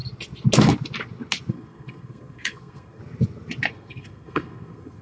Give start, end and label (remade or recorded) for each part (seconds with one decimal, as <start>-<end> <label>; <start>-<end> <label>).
0.0-1.5 recorded; 1.5-3.0 remade; 3.0-3.7 recorded; 3.7-5.0 remade